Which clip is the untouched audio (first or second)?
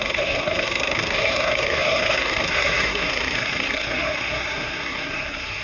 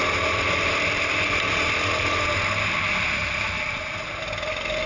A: second